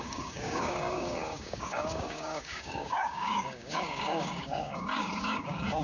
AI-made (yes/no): yes